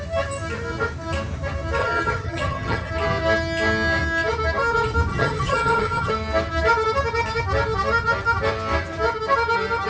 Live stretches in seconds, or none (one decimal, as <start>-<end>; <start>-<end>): 0.0-1.8; 2.9-5.1; 6.1-9.9